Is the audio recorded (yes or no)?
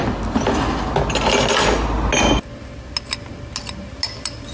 yes